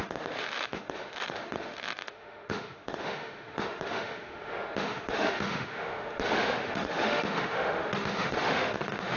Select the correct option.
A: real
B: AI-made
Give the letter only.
B